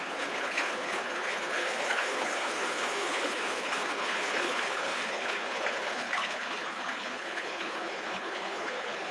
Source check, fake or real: fake